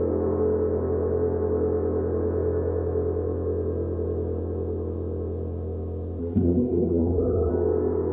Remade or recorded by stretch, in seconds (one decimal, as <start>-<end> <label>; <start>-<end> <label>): 0.0-6.2 recorded; 6.2-7.5 remade; 7.5-8.1 recorded